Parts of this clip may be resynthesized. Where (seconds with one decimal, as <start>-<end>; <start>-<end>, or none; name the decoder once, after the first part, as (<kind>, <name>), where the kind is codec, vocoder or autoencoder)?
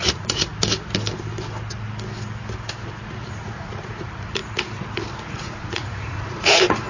0.0-0.5 (vocoder, Vocos); 3.3-4.4; 5.2-6.9